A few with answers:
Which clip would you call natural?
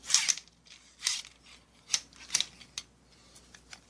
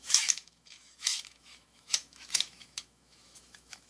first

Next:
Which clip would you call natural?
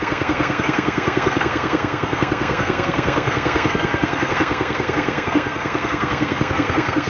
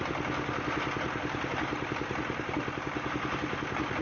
second